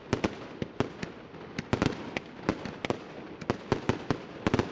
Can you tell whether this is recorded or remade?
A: recorded